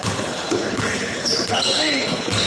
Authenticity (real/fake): fake